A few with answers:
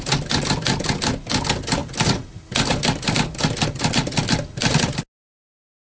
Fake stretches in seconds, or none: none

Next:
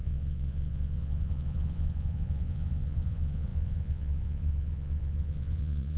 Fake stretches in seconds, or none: 0.0-6.0 (vocoder, Vocos)